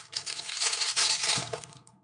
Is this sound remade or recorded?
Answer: remade